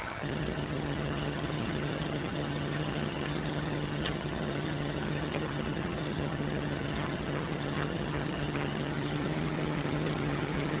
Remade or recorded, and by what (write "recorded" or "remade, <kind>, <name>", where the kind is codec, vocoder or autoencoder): remade, vocoder, HiFi-GAN